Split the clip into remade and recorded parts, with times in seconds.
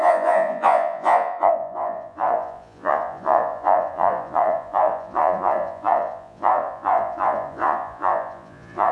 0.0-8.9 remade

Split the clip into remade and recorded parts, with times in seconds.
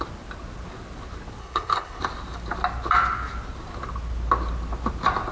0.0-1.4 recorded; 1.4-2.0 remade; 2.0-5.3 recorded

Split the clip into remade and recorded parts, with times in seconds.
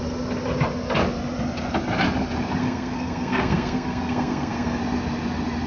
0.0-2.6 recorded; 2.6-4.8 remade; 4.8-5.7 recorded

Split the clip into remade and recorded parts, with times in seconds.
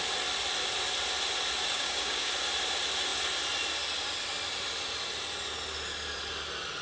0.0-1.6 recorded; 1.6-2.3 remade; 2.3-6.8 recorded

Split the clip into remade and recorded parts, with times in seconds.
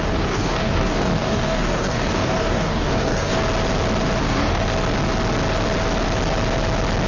0.0-3.4 remade; 3.4-4.2 recorded; 4.2-4.7 remade; 4.7-7.1 recorded